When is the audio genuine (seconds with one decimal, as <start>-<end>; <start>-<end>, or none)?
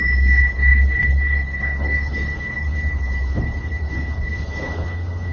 none